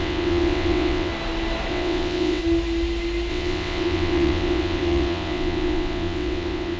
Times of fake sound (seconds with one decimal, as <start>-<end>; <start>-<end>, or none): 0.0-1.1; 1.7-2.4; 3.3-6.8